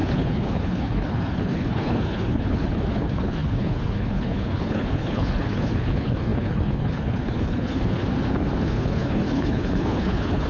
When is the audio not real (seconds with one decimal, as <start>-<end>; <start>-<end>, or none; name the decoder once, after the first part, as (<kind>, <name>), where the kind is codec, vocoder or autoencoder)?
0.0-8.0 (codec, HILCodec); 8.6-10.5